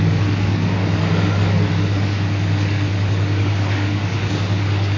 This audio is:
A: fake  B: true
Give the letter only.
A